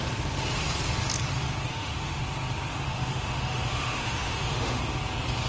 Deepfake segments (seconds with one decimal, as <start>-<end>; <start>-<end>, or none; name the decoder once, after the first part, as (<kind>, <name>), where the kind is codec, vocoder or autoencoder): 1.7-2.2 (autoencoder, DAC-VAE); 2.7-4.8